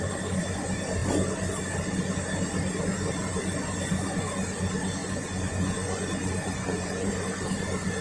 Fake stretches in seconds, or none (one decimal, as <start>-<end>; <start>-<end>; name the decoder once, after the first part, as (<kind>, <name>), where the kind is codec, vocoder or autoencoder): 3.9-4.4 (vocoder, Vocos); 5.0-7.1